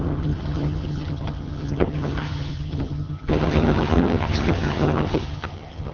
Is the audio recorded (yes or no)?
no